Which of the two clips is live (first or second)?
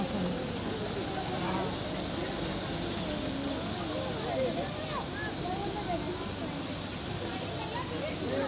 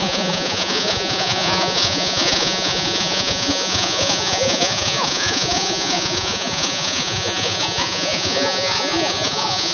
first